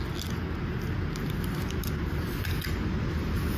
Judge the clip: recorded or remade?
recorded